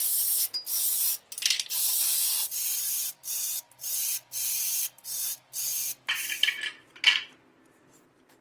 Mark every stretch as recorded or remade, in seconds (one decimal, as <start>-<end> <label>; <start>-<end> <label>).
0.0-1.1 recorded; 1.1-3.6 remade; 3.6-5.7 recorded; 5.7-6.3 remade; 6.3-8.4 recorded